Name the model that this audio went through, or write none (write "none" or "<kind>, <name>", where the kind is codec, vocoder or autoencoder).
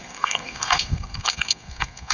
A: codec, SNAC